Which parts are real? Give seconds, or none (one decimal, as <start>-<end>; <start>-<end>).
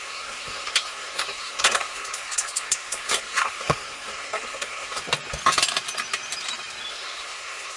5.0-6.9